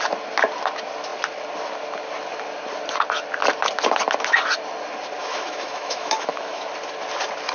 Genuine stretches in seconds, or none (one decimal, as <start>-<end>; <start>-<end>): 0.0-5.2; 6.6-7.5